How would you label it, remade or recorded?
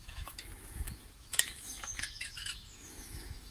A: remade